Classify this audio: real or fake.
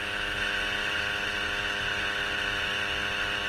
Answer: real